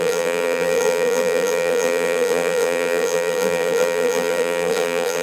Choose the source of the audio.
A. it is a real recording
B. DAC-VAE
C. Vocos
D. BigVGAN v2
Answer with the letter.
D